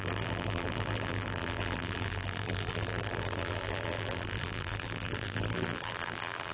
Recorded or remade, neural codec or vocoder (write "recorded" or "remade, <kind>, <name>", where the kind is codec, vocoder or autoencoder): remade, vocoder, BigVGAN v2